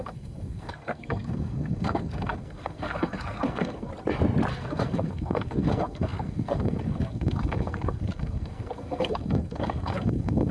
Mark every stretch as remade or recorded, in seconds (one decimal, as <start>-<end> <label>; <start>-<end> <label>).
0.0-3.9 remade; 3.9-4.5 recorded; 4.5-10.5 remade